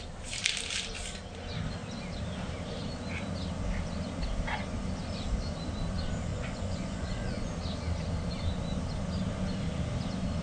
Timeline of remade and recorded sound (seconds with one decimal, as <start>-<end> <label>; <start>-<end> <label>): 0.0-6.3 recorded; 6.3-7.5 remade; 7.5-10.4 recorded